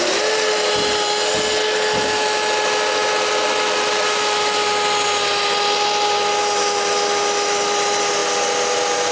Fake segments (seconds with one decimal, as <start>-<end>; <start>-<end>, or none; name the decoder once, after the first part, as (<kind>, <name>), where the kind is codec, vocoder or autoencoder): none